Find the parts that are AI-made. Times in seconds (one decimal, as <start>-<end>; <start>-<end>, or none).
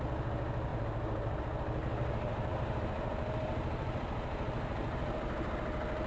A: 0.7-1.4; 1.8-5.5